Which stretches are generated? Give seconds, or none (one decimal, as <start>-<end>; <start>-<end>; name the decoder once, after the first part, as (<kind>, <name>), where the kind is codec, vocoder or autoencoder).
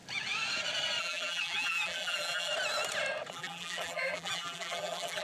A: 1.0-2.5 (vocoder, BigVGAN v2); 3.3-5.2